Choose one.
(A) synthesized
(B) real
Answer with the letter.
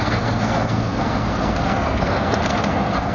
A